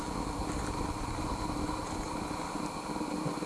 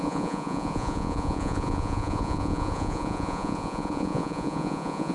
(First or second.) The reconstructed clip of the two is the second